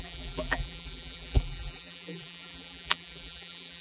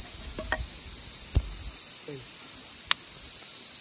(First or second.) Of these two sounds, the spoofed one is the first